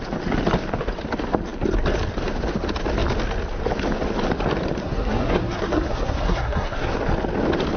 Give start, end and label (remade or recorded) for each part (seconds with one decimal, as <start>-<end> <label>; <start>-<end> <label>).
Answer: 0.0-4.8 recorded; 4.8-6.9 remade; 6.9-7.8 recorded